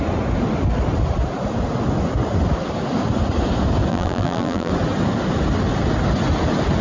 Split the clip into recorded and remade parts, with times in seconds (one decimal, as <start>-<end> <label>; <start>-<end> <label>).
0.0-3.9 recorded; 3.9-4.7 remade; 4.7-6.8 recorded